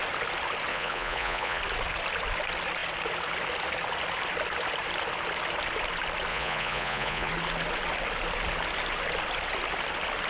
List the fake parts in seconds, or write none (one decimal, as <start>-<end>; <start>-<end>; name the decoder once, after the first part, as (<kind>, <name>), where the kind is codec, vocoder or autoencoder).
0.7-1.6 (vocoder, Vocos); 6.3-7.3